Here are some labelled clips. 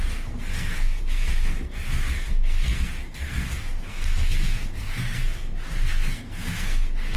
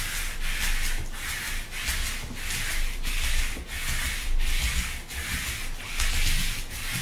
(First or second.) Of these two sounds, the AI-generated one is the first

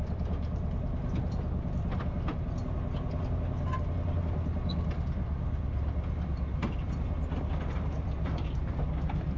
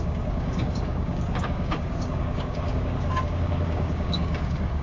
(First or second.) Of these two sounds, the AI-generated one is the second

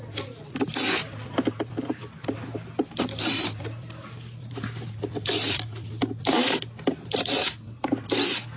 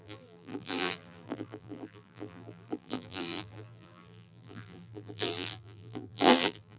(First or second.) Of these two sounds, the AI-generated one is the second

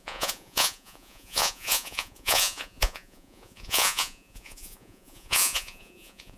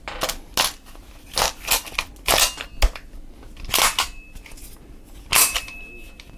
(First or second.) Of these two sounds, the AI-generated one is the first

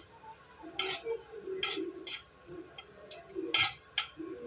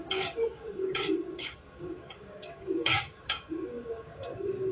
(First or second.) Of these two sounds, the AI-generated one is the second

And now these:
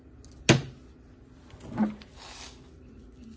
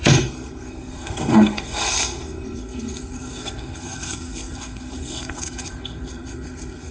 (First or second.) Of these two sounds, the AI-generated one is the second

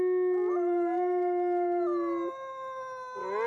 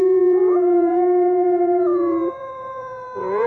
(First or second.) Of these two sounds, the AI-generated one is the second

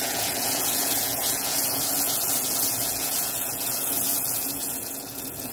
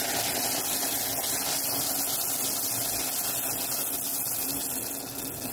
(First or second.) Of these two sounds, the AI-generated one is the first